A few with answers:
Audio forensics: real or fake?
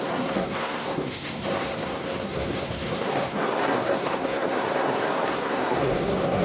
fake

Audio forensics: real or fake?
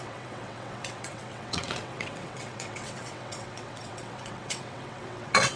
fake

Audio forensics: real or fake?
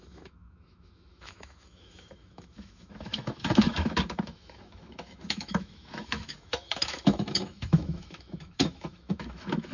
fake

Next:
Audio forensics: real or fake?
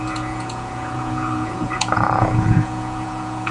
fake